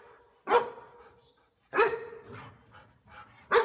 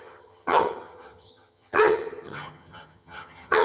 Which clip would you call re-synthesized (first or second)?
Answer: second